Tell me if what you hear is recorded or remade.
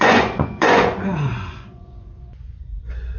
remade